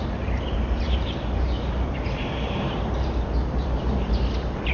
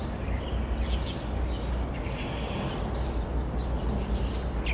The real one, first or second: second